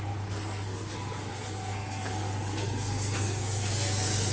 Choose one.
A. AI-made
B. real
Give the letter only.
A